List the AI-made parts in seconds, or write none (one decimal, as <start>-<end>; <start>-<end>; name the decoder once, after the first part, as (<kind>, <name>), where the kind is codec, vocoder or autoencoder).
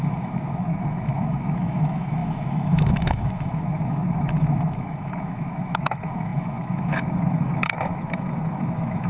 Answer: 0.0-9.1 (autoencoder, DAC-VAE)